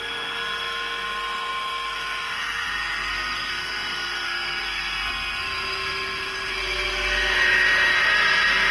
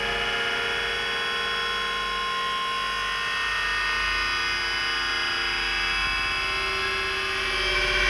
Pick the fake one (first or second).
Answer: first